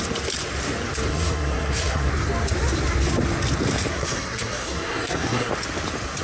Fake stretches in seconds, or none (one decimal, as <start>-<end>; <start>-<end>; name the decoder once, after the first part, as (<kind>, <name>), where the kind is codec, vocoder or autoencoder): 1.1-2.1 (codec, SNAC); 3.9-5.5